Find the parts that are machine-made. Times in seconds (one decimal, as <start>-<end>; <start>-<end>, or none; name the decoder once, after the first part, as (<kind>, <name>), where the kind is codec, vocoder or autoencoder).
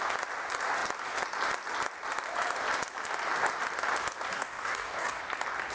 4.3-5.2 (codec, DAC)